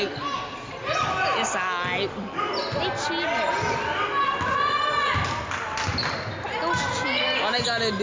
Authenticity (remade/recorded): recorded